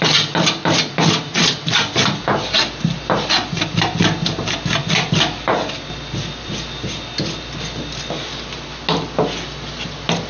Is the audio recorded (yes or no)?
yes